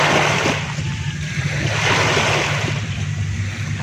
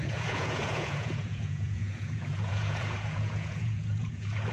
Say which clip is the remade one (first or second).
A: second